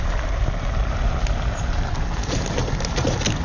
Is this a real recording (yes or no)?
yes